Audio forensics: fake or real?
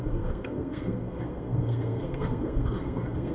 fake